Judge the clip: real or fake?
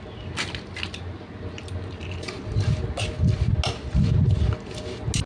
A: real